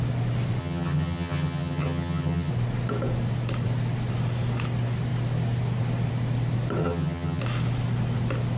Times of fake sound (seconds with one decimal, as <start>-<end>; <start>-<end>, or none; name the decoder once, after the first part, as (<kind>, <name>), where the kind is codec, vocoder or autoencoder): 0.6-2.5 (vocoder, HiFi-GAN); 6.8-7.4